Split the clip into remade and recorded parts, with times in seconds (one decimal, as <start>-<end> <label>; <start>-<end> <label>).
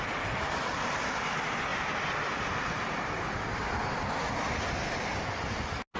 0.0-6.0 recorded